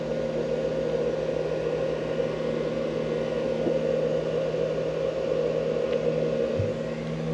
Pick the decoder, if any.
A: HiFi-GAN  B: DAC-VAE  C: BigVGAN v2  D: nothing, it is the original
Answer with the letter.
D